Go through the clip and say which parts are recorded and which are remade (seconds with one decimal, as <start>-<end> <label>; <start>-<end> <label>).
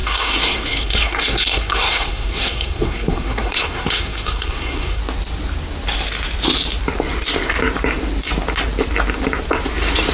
0.0-5.0 remade; 5.0-10.1 recorded